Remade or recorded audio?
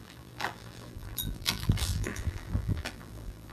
remade